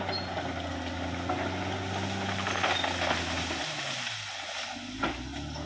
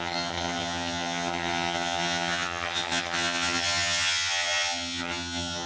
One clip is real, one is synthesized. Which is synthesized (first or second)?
second